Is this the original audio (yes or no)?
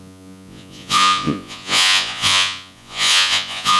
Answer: no